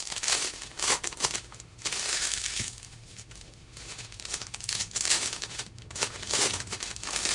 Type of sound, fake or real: fake